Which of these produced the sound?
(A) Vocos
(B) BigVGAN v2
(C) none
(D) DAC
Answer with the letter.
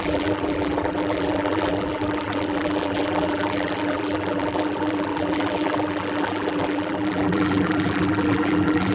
B